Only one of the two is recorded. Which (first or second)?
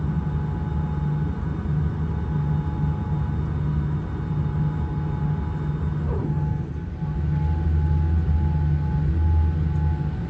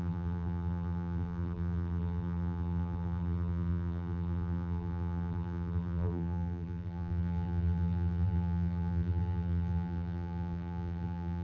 first